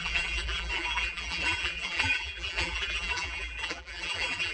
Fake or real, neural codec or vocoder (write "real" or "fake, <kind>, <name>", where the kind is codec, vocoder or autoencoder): fake, vocoder, BigVGAN v2